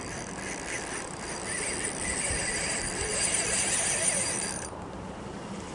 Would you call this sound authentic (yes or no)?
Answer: no